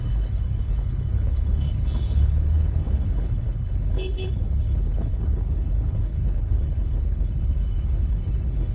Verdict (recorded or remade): remade